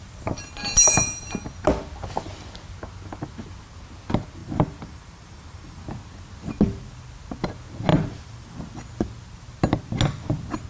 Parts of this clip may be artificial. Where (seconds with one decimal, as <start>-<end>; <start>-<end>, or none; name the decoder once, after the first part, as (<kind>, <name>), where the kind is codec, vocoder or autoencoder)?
4.4-5.8 (vocoder, BigVGAN v2); 7.9-8.6